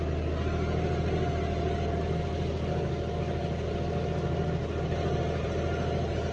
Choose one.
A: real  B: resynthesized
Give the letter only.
A